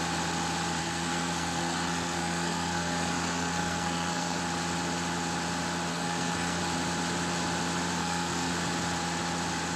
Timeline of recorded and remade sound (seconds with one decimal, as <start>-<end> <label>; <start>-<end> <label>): 0.0-0.8 recorded; 0.8-4.4 remade; 4.4-5.9 recorded; 5.9-6.6 remade; 6.6-8.0 recorded; 8.0-8.5 remade; 8.5-9.8 recorded